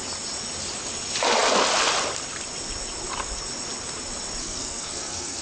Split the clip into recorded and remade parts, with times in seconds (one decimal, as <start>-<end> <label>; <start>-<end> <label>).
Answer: 0.0-4.4 recorded; 4.4-5.4 remade